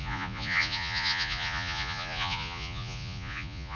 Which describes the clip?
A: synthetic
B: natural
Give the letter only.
A